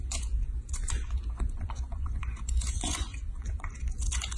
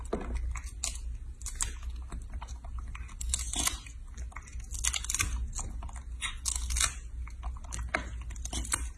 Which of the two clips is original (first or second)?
second